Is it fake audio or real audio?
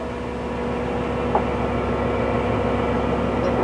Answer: real